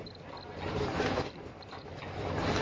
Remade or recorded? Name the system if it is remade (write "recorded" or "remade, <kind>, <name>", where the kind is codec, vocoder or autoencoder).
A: recorded